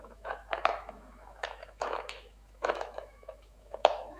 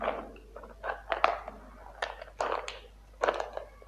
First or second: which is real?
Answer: second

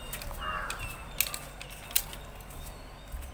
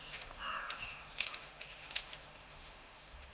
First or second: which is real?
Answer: first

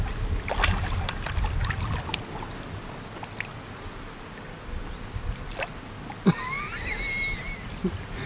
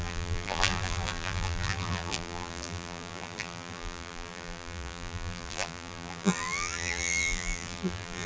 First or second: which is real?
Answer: first